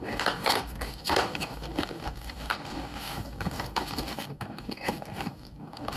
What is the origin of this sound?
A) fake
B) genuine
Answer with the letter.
A